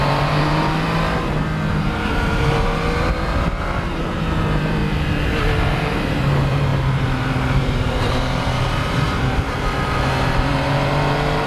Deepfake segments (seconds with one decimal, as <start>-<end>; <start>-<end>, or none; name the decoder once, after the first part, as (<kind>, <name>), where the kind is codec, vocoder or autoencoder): 0.0-1.0 (vocoder, BigVGAN v2); 1.7-4.8; 5.7-11.5

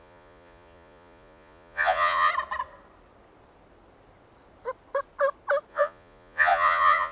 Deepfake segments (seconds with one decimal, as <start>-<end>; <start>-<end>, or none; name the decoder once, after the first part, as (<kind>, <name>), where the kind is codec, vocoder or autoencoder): 0.0-2.3 (vocoder, Vocos); 5.7-7.1

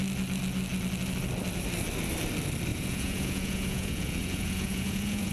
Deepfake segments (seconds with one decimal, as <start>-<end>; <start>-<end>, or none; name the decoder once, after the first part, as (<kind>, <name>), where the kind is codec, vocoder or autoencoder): 2.7-5.3 (vocoder, Vocos)